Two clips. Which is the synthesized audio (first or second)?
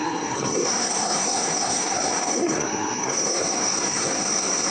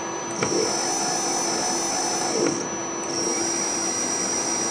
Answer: first